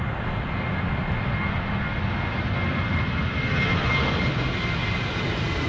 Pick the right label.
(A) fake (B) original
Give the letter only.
B